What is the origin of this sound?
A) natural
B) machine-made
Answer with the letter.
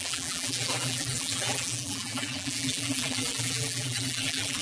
B